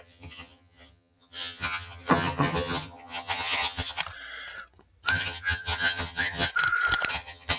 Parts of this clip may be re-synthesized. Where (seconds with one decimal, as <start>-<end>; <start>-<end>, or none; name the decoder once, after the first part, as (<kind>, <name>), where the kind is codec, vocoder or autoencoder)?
0.0-4.0 (vocoder, HiFi-GAN); 5.1-6.5; 7.1-7.6